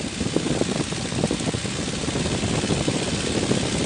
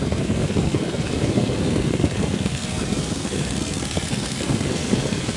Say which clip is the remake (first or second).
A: second